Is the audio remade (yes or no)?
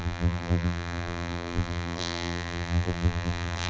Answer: yes